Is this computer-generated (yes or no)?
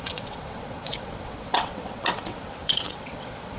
yes